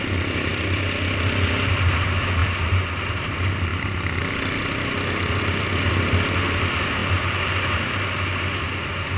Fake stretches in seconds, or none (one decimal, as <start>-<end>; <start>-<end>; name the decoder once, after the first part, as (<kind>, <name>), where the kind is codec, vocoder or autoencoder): none